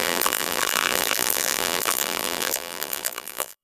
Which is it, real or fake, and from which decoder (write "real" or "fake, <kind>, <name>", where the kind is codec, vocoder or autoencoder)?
fake, vocoder, BigVGAN v2